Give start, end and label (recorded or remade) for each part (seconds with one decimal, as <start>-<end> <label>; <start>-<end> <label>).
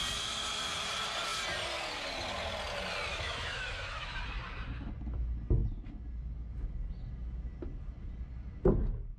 0.0-3.1 recorded; 3.1-4.2 remade; 4.2-9.2 recorded